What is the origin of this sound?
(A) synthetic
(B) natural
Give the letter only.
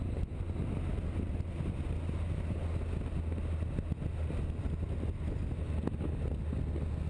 B